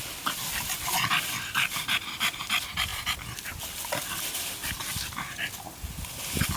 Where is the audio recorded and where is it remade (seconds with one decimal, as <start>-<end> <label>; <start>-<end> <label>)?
0.0-6.6 recorded